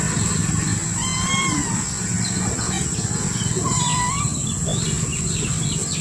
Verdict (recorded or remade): recorded